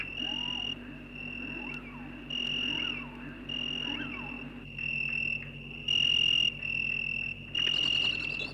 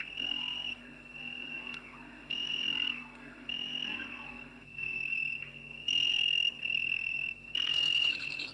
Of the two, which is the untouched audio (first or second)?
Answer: first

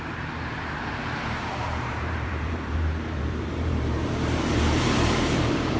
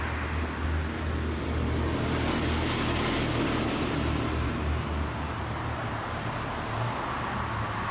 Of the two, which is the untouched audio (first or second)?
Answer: second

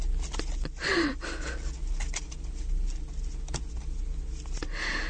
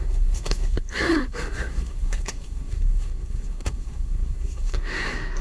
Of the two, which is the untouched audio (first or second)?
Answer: first